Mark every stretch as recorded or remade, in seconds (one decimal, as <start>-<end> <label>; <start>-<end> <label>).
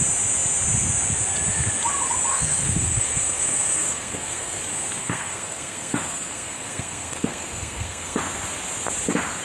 0.0-2.3 recorded; 2.3-4.6 remade; 4.6-5.0 recorded; 5.0-8.2 remade; 8.2-9.4 recorded